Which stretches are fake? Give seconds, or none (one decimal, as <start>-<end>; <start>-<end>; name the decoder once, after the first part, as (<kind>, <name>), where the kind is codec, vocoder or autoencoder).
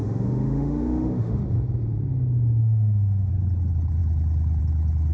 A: 0.0-1.4 (autoencoder, DAC-VAE); 2.6-3.3